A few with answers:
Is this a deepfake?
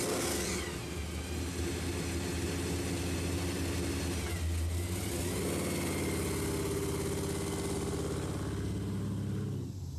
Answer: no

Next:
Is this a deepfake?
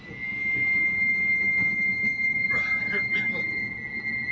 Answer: no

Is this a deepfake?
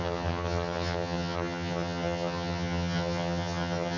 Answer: yes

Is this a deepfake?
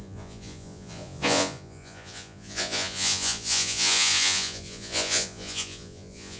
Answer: yes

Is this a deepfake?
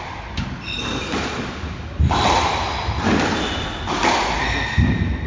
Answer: no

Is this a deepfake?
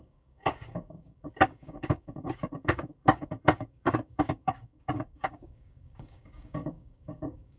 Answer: yes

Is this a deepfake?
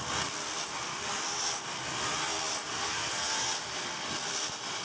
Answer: no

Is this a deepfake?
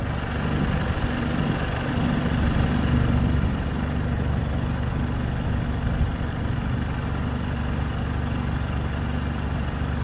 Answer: no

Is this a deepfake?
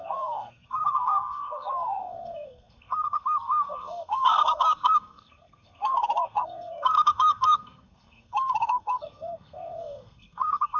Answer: yes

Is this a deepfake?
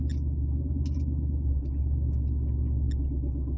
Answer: no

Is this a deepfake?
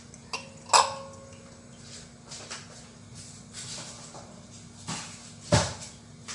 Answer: no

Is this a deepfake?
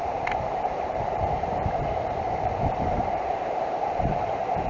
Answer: yes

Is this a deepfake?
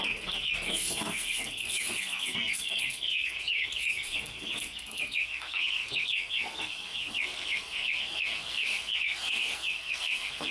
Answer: yes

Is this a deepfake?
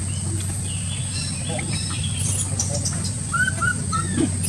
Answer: no